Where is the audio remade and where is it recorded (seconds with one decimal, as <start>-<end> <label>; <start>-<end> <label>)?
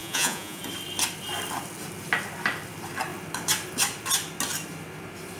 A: 0.0-0.6 remade; 0.6-5.4 recorded